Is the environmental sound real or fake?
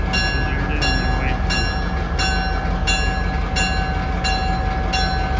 real